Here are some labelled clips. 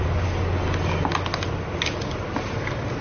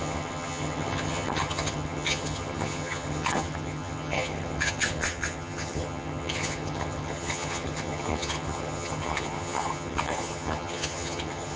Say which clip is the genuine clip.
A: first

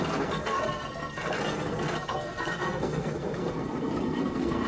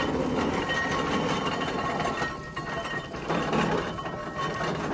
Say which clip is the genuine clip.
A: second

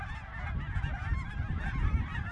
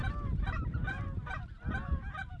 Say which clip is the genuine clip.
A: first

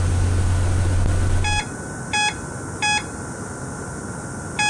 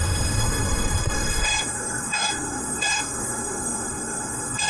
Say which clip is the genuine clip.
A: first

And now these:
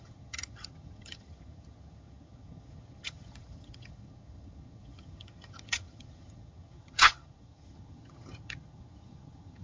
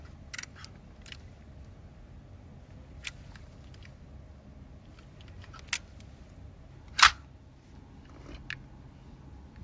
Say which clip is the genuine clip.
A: second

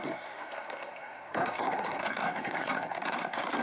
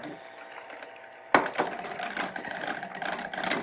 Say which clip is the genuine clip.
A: second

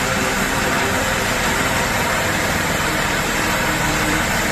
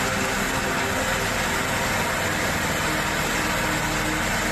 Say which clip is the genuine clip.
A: second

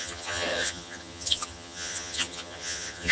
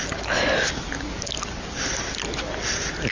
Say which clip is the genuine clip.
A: second